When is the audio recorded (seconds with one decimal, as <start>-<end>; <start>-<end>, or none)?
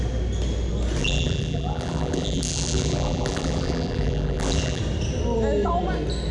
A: 0.0-1.0; 4.8-6.3